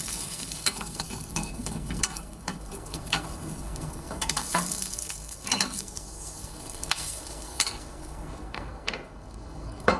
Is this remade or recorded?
remade